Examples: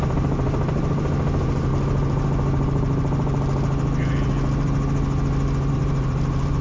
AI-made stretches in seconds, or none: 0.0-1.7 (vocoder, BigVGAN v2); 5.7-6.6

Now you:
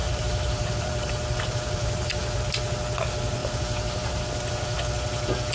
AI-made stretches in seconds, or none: 0.0-2.4 (vocoder, BigVGAN v2); 3.4-4.2

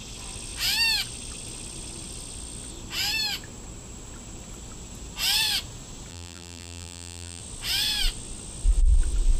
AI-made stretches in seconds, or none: 6.1-7.4 (vocoder, BigVGAN v2)